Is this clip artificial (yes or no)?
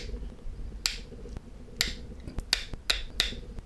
no